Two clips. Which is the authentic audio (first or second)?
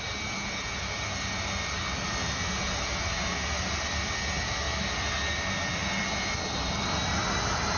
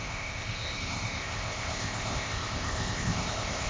first